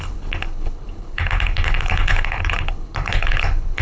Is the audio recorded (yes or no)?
no